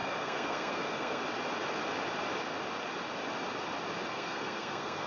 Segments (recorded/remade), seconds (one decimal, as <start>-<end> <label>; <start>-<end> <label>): 0.0-1.2 remade; 1.2-4.1 recorded; 4.1-5.1 remade